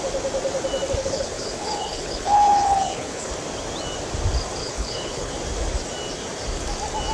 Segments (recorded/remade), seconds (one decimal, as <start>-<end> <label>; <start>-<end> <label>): 0.0-1.0 recorded; 1.0-3.3 remade; 3.3-4.6 recorded; 4.6-5.3 remade; 5.3-7.1 recorded